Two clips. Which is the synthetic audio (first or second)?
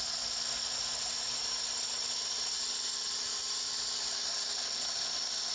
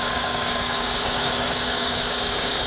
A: second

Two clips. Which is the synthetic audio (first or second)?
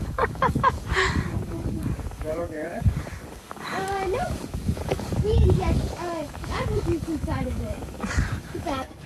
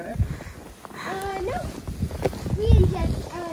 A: first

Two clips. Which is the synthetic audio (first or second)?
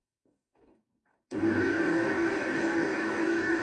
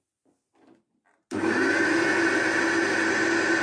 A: first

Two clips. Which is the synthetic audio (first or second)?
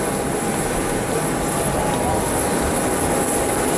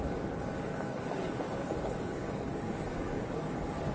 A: second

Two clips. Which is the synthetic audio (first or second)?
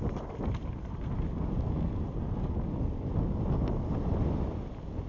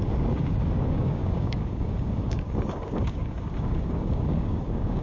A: second